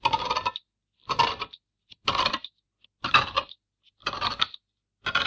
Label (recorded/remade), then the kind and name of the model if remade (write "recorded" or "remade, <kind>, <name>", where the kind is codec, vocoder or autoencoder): recorded